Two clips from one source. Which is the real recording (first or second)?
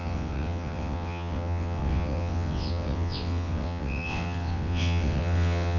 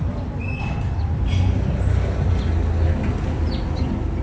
second